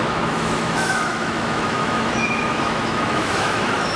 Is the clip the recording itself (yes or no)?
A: no